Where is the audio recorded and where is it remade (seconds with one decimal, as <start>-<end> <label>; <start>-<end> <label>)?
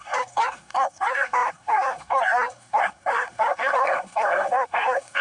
0.0-5.2 remade